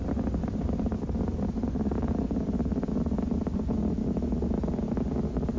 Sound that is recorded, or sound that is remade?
recorded